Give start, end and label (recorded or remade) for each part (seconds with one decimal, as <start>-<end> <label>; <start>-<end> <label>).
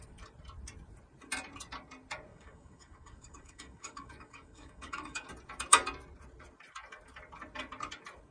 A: 0.0-2.3 recorded; 2.3-5.3 remade; 5.3-8.3 recorded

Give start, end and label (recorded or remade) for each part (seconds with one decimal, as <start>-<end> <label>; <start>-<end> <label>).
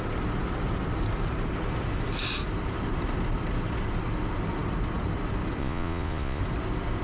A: 0.0-5.6 recorded; 5.6-6.4 remade; 6.4-7.0 recorded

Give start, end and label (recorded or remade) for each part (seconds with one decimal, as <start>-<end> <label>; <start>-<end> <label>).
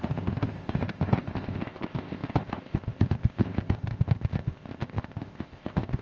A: 0.0-6.0 remade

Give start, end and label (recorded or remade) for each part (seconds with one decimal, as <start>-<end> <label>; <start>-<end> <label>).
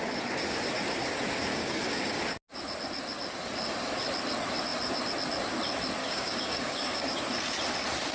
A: 0.0-1.5 recorded; 1.5-2.2 remade; 2.2-6.0 recorded; 6.0-7.2 remade; 7.2-8.1 recorded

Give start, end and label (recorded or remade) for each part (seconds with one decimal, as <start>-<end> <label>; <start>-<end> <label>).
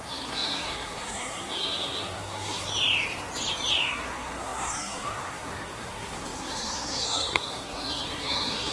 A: 0.0-2.7 remade; 2.7-3.7 recorded; 3.7-8.7 remade